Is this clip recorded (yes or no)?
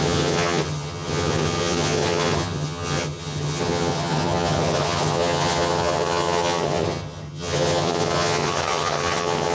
no